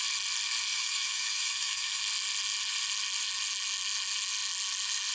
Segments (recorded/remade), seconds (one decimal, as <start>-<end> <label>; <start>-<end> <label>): 0.0-0.7 recorded; 0.7-2.0 remade; 2.0-5.1 recorded

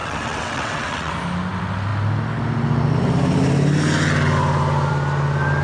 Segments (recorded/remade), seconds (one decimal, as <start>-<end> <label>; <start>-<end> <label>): 0.0-1.1 remade; 1.1-5.6 recorded

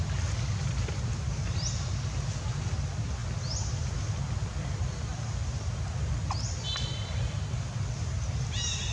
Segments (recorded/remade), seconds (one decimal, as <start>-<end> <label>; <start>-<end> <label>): 0.0-8.9 recorded

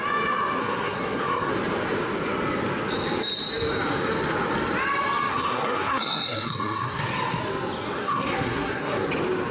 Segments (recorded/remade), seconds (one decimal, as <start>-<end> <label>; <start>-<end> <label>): 0.0-0.6 recorded; 0.6-1.5 remade; 1.5-5.3 recorded; 5.3-7.0 remade; 7.0-8.0 recorded; 8.0-9.1 remade; 9.1-9.5 recorded

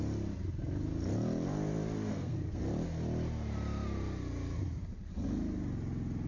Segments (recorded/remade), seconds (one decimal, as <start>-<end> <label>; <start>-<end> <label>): 0.0-2.1 recorded; 2.1-2.6 remade; 2.6-6.3 recorded

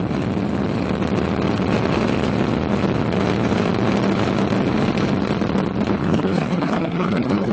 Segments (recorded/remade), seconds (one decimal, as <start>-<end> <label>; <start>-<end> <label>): 0.0-6.0 recorded; 6.0-7.5 remade

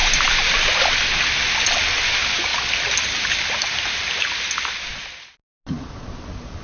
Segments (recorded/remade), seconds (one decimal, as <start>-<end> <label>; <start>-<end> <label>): 0.0-0.8 remade; 0.8-6.6 recorded

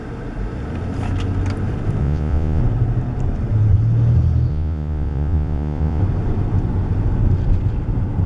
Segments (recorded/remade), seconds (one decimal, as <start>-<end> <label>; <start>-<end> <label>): 0.0-2.0 recorded; 2.0-2.6 remade; 2.6-4.5 recorded; 4.5-6.0 remade; 6.0-8.3 recorded